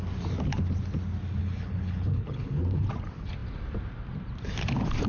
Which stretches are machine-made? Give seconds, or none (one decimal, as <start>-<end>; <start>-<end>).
1.4-2.6